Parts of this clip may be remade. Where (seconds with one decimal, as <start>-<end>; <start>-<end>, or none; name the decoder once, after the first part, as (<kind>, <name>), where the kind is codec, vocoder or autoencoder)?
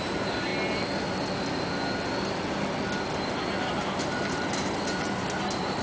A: 0.0-0.5 (vocoder, BigVGAN v2); 4.0-5.8